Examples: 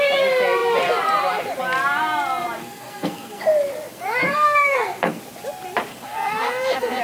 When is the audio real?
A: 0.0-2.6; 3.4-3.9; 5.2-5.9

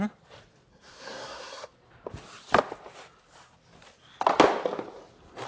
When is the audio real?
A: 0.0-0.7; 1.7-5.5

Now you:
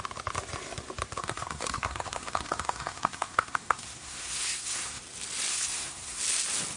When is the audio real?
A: 0.0-1.2; 5.0-5.5; 6.2-6.8